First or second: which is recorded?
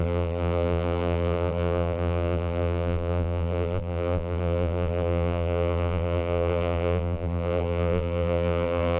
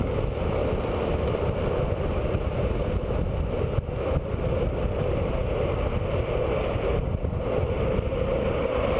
second